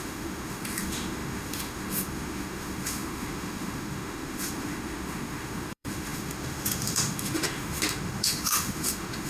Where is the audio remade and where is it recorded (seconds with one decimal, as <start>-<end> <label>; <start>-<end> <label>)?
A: 0.0-9.3 remade